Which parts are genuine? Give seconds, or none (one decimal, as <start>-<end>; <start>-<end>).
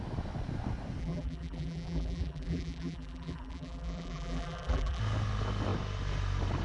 0.0-1.0; 5.0-6.6